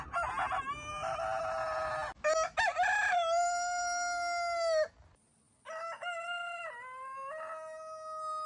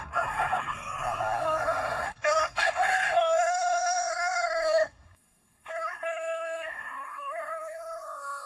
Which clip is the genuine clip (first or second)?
first